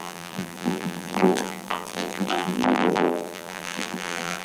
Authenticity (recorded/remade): remade